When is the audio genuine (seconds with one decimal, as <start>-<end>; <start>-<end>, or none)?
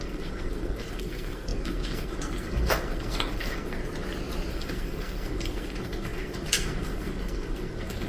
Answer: 3.8-4.5